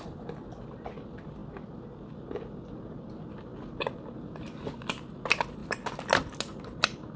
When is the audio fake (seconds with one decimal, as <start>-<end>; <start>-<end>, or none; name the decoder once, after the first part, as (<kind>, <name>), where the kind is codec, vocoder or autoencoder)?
none